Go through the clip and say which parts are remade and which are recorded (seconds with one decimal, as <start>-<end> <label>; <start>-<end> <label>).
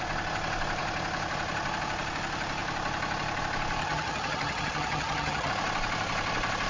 0.0-3.8 recorded; 3.8-5.5 remade; 5.5-6.7 recorded